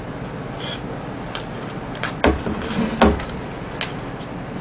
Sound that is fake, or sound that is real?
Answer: real